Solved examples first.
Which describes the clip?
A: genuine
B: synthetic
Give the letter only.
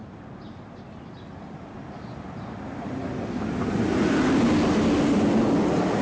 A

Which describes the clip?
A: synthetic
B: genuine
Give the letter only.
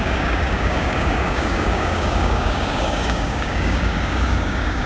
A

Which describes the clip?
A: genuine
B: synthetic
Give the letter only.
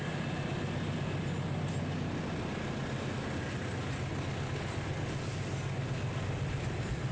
A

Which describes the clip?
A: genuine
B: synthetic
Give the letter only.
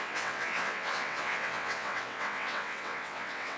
B